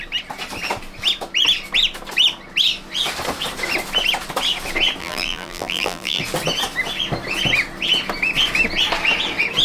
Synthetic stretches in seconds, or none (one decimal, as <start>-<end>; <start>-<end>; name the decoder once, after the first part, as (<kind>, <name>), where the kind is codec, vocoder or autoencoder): 5.0-6.2 (vocoder, BigVGAN v2)